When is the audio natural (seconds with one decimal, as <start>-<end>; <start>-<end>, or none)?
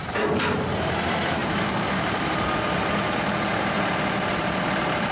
0.0-1.4; 3.1-3.5